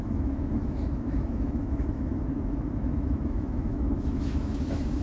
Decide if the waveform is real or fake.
fake